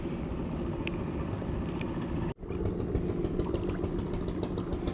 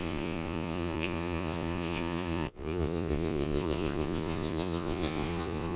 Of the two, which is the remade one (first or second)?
second